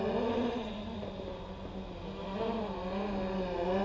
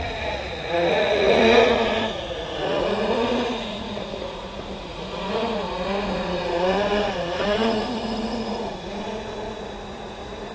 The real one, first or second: first